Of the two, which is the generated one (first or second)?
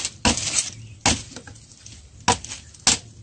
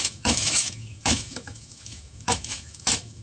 second